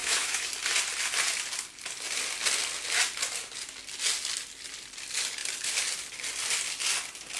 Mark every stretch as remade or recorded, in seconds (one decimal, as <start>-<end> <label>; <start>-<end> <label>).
0.0-0.5 remade; 0.5-7.4 recorded